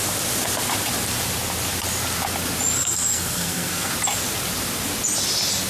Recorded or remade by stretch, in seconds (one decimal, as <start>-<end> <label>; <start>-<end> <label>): 0.0-2.8 recorded; 2.8-3.9 remade; 3.9-5.7 recorded